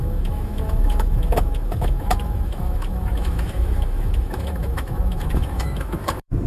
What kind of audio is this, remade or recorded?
remade